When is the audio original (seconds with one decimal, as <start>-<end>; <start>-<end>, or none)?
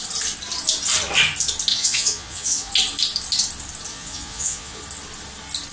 0.0-1.7; 2.7-3.9; 4.8-5.7